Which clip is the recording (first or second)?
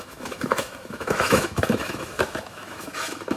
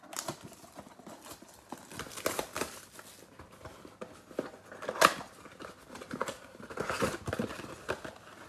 second